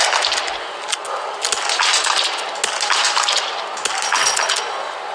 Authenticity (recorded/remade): recorded